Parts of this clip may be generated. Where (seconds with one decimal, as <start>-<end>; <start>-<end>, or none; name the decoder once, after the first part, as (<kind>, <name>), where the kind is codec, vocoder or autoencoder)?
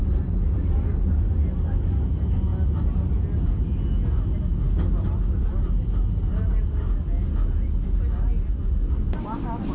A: none